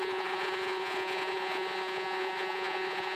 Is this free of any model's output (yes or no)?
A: no